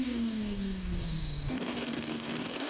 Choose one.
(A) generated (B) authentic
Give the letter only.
A